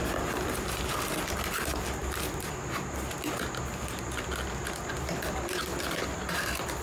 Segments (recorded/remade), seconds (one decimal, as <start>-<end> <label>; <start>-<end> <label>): 0.0-2.0 remade; 2.0-4.9 recorded; 4.9-6.8 remade

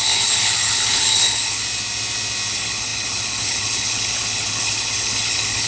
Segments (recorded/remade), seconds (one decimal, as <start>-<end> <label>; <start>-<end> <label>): 0.0-1.6 remade; 1.6-2.5 recorded; 2.5-5.7 remade

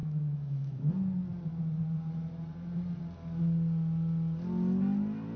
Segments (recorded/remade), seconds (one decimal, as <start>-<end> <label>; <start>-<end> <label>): 0.0-0.9 remade; 0.9-5.4 recorded

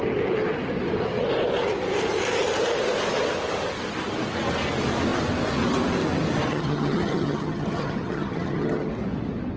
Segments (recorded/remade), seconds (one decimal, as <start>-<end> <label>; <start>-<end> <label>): 0.0-6.5 recorded; 6.5-8.9 remade; 8.9-9.6 recorded

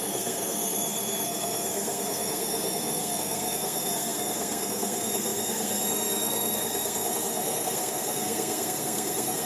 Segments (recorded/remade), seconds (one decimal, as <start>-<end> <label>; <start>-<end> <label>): 0.0-9.5 remade